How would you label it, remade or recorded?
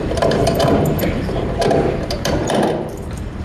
remade